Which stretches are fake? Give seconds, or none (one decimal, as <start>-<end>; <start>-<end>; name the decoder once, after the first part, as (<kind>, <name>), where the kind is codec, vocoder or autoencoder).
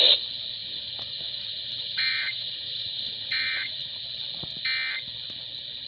0.6-4.0 (vocoder, Vocos)